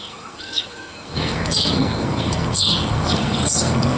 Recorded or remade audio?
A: remade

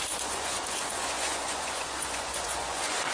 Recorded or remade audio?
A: remade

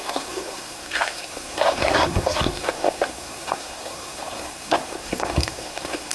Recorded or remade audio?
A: remade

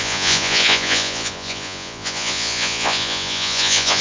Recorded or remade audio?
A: remade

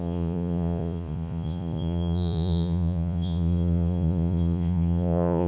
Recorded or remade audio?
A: remade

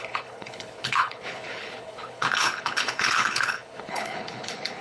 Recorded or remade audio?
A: remade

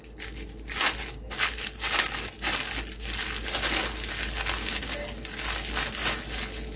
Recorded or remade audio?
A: recorded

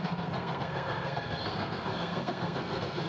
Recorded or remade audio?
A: remade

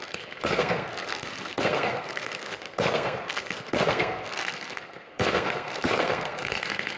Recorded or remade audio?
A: remade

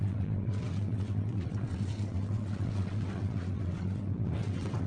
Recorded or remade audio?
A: remade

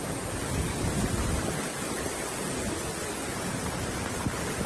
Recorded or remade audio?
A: recorded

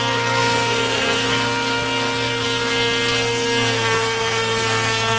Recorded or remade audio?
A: remade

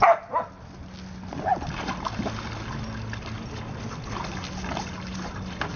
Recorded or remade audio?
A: recorded